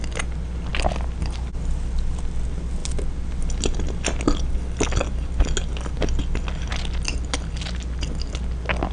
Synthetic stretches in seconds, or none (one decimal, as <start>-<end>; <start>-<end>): none